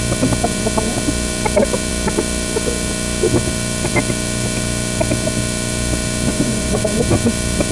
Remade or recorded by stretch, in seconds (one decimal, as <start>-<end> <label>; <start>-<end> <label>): 0.0-6.3 recorded; 6.3-6.8 remade; 6.8-7.7 recorded